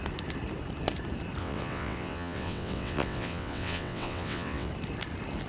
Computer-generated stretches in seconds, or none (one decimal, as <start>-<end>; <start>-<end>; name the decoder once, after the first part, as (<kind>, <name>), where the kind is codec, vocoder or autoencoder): 1.4-4.7 (vocoder, WaveNeXt)